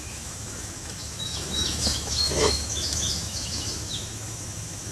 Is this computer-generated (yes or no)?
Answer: yes